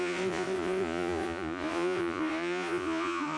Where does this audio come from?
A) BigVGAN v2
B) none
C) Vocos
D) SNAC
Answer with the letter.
C